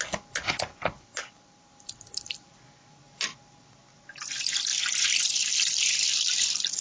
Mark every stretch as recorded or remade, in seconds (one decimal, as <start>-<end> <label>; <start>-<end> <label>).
0.0-0.7 recorded; 0.7-3.0 remade; 3.0-4.7 recorded; 4.7-5.8 remade; 5.8-6.8 recorded